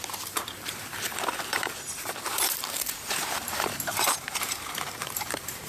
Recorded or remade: remade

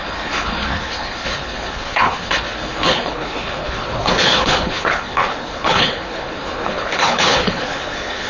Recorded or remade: remade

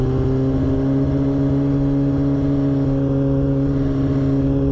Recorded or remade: recorded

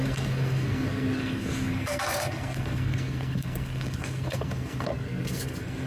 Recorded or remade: remade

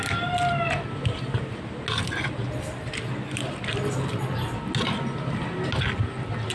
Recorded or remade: recorded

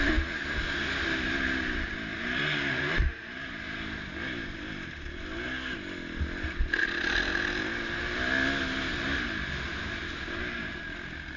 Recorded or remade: recorded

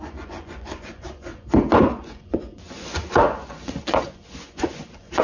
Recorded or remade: remade